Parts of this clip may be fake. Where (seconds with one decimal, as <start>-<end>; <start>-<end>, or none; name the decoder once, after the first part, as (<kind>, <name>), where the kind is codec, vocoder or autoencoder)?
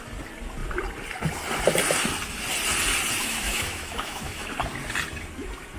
3.2-4.5 (autoencoder, DAC-VAE)